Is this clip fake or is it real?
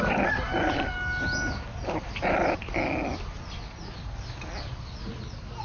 real